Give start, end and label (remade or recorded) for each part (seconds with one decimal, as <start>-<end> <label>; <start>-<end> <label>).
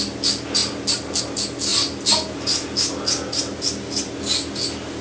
0.0-5.0 recorded